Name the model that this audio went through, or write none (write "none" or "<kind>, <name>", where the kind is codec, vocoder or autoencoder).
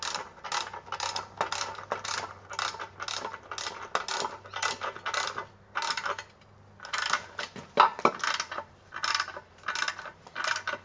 none